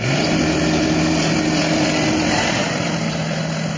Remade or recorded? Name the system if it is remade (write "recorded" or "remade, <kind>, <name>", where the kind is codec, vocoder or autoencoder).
recorded